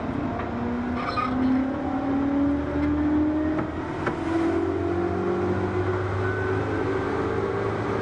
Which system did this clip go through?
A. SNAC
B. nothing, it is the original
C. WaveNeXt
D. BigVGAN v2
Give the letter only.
B